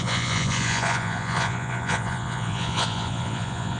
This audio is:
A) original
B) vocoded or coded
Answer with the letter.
B